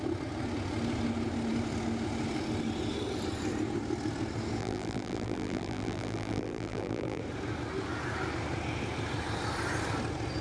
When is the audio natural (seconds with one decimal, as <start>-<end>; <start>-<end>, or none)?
0.0-4.6; 7.2-10.4